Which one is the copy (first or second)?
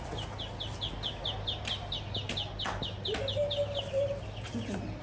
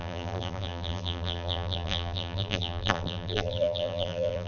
second